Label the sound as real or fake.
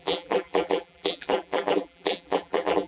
fake